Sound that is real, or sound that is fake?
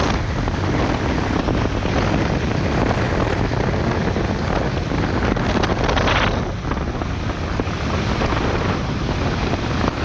real